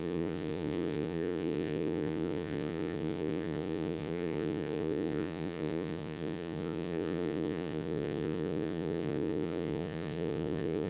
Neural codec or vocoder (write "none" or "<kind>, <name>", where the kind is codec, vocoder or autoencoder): vocoder, Vocos